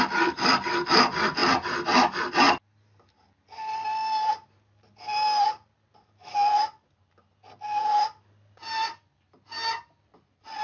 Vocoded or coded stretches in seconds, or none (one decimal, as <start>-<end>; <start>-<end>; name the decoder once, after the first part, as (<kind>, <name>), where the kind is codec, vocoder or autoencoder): none